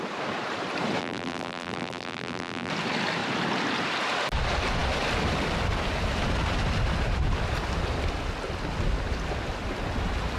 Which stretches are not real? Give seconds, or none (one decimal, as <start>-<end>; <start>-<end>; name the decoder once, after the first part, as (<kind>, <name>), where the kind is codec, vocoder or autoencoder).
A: 1.0-2.7 (vocoder, BigVGAN v2)